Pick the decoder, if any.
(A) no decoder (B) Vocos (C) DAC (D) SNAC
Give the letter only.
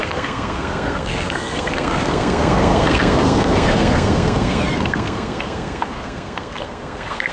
D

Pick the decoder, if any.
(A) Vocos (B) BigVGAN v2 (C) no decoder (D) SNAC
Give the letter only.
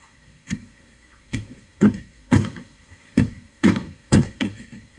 D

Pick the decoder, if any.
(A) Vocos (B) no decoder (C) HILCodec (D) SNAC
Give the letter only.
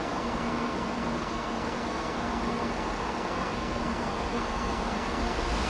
D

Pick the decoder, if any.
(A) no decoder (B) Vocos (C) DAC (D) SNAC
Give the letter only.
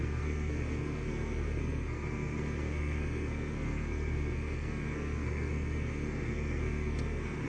D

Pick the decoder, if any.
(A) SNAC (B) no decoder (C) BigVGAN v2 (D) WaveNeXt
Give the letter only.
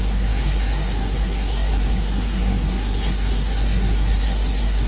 A